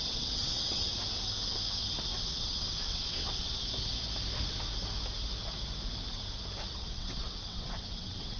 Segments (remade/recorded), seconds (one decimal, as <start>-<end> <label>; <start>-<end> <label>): 0.0-0.9 remade; 0.9-2.3 recorded; 2.3-3.6 remade; 3.6-6.7 recorded; 6.7-8.4 remade